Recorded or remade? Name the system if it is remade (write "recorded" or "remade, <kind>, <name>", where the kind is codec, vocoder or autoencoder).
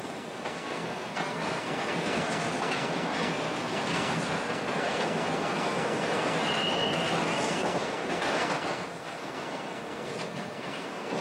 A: remade, codec, SNAC